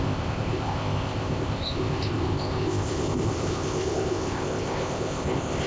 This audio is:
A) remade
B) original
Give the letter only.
A